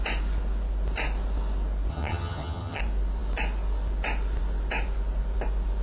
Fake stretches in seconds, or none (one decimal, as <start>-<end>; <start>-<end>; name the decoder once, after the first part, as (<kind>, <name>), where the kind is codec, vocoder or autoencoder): 1.9-2.8 (vocoder, HiFi-GAN)